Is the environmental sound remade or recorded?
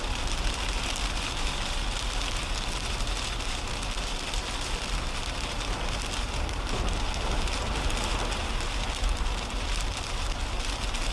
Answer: recorded